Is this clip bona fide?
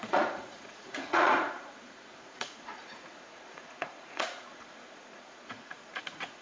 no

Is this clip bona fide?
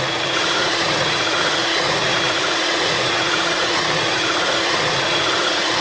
no